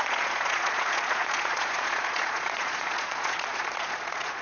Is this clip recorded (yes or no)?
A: no